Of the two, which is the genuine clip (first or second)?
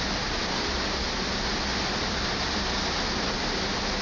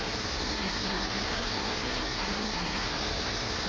first